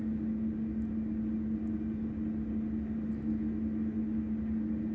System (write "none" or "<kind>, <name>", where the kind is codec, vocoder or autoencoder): none